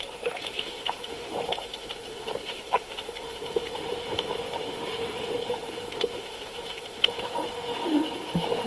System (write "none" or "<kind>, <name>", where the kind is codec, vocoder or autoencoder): autoencoder, DAC-VAE